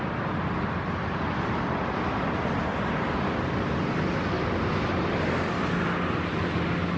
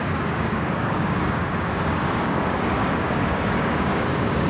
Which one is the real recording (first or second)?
first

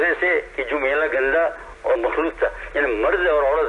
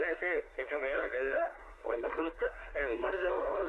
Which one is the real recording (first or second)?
first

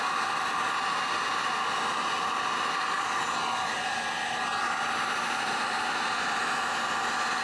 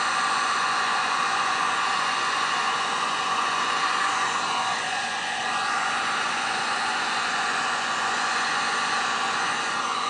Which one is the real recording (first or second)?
first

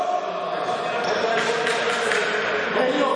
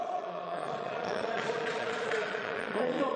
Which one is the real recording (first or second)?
first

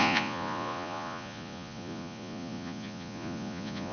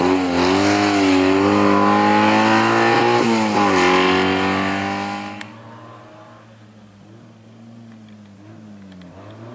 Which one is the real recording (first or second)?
second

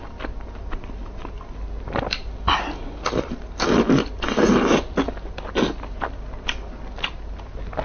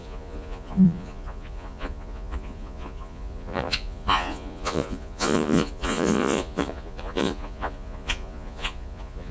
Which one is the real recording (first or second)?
first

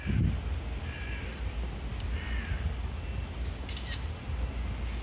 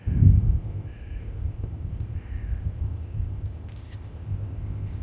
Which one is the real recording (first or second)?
first